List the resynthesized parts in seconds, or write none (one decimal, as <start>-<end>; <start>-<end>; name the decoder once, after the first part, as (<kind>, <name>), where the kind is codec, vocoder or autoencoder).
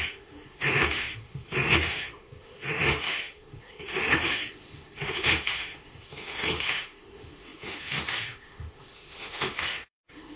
0.0-10.4 (autoencoder, DAC-VAE)